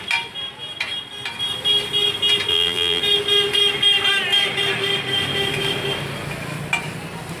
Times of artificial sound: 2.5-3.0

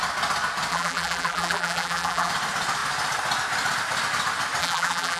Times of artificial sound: 0.7-2.3; 4.6-5.2

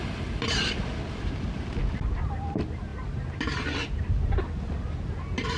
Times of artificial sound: none

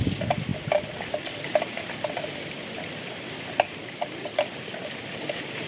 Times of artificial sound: 0.5-3.9

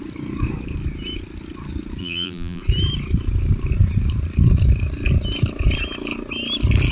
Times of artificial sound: 2.0-2.6

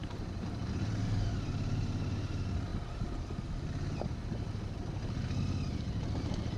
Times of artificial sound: 0.0-2.3

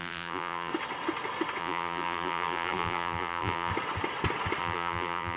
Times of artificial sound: 0.0-0.7; 1.6-3.7; 4.6-5.4

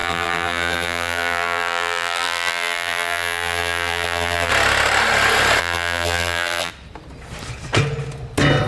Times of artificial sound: 0.0-4.5; 5.6-6.7